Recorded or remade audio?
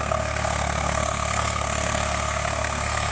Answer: remade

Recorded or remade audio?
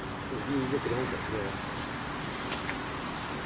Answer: recorded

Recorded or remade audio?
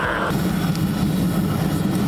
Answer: recorded